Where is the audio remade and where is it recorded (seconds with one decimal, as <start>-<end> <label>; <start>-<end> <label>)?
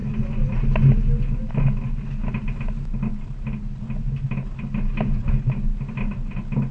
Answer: 0.0-6.7 recorded